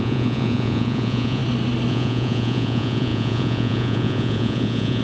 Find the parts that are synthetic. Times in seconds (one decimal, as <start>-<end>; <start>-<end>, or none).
0.0-1.4; 1.9-5.0